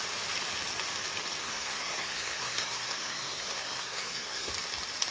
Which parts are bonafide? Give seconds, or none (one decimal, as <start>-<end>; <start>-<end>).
0.0-1.4; 4.5-5.1